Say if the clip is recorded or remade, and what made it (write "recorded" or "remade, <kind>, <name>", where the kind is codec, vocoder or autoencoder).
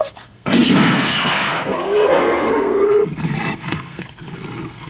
remade, codec, SNAC